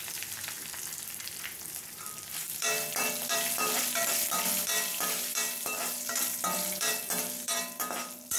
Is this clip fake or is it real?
fake